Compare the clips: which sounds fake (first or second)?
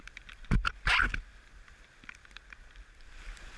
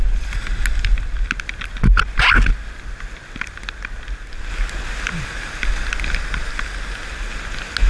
first